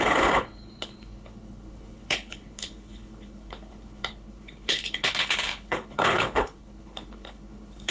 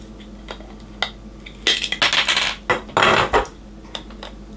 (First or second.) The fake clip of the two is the first